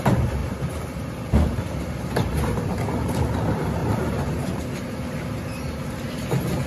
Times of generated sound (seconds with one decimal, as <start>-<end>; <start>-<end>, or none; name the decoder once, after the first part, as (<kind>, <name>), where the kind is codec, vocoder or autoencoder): 0.4-1.3 (vocoder, BigVGAN v2); 3.8-4.6

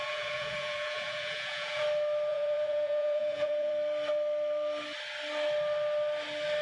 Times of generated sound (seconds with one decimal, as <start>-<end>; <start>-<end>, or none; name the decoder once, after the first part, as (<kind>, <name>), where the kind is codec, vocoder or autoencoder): 0.0-1.8 (vocoder, Vocos); 2.3-3.7

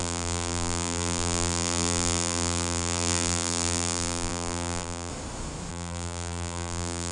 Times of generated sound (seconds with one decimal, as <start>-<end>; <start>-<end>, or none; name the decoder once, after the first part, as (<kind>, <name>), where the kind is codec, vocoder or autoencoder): 0.0-5.1 (vocoder, BigVGAN v2); 5.7-7.1